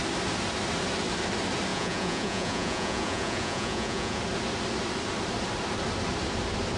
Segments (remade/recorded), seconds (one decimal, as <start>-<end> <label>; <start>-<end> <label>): 0.0-1.7 recorded; 1.7-4.2 remade; 4.2-6.8 recorded